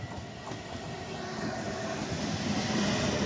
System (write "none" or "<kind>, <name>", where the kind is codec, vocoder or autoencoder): none